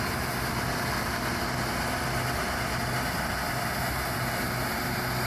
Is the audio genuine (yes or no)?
yes